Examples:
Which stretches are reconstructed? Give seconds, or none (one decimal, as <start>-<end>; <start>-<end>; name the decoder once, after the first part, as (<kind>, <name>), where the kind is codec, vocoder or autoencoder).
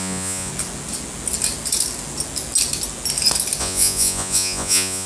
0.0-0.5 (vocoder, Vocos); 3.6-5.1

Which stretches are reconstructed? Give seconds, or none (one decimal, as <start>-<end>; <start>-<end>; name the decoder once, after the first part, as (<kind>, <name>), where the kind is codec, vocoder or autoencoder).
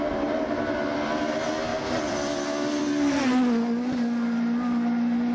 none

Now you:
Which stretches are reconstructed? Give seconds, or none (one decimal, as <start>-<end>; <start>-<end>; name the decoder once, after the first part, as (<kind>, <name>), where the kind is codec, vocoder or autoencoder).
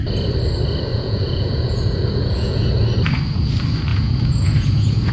0.9-2.7 (vocoder, Vocos); 3.9-5.1